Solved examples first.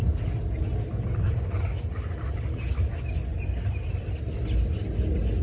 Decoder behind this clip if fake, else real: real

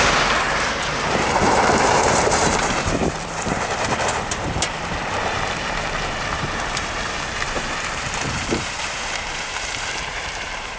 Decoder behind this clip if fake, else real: fake, vocoder, BigVGAN v2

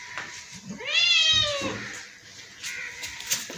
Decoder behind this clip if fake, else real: real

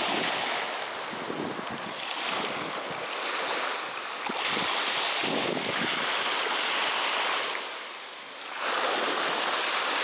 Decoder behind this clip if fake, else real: real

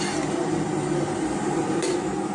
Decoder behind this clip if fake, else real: real